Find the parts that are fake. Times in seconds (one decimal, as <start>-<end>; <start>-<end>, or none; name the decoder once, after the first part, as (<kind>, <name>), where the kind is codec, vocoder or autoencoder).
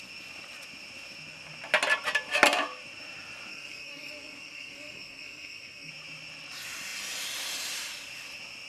3.5-5.9 (codec, SNAC)